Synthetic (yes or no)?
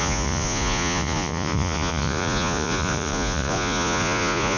yes